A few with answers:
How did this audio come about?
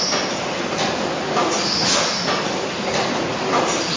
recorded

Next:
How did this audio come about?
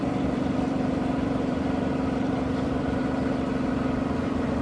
remade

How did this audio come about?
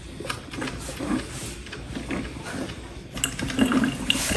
recorded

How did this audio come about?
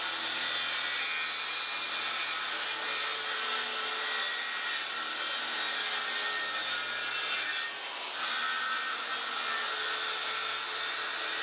recorded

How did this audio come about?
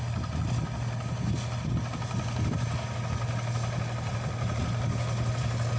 recorded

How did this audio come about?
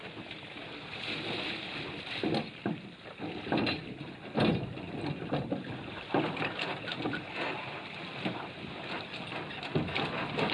recorded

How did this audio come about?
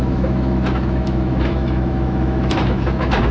remade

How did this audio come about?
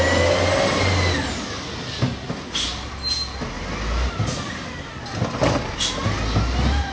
recorded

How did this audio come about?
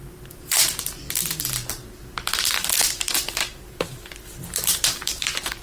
remade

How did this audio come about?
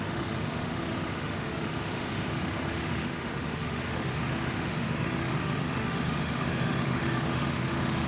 remade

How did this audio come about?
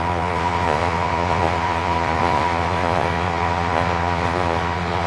remade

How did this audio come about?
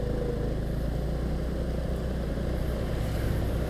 recorded